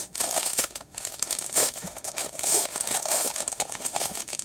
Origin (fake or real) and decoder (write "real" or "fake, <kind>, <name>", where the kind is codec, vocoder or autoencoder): fake, autoencoder, DAC-VAE